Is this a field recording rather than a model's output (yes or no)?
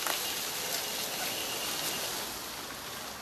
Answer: yes